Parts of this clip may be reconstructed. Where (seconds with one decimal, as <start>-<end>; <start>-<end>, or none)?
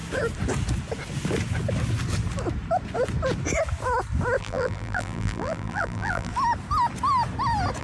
4.4-6.3